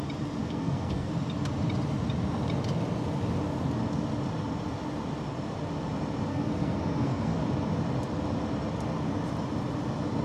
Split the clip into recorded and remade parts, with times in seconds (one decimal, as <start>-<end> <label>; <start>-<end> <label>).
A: 0.0-0.4 recorded; 0.4-1.1 remade; 1.1-6.3 recorded; 6.3-7.4 remade; 7.4-10.2 recorded